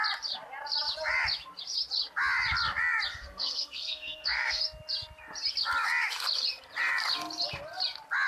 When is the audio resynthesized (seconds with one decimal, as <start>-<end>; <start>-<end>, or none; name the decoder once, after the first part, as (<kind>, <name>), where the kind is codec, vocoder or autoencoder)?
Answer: 3.1-4.6 (codec, SNAC)